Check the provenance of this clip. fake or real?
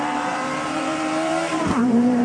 fake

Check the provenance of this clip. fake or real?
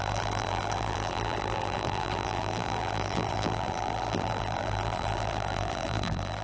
fake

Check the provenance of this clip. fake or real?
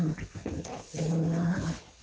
fake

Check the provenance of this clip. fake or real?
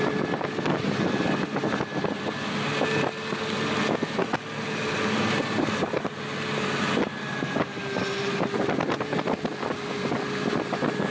real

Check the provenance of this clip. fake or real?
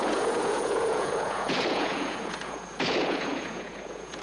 fake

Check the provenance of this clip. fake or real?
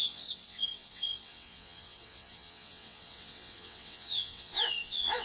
fake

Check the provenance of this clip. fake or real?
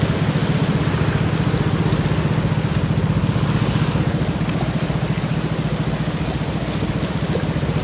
real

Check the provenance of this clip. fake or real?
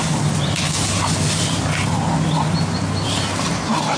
real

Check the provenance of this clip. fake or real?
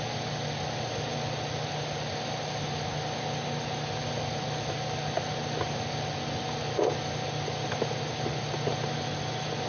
real